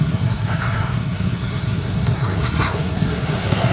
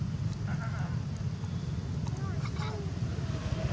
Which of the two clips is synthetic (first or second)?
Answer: first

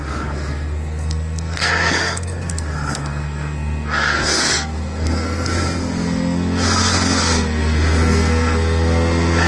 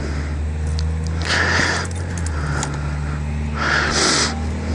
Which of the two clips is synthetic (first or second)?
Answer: first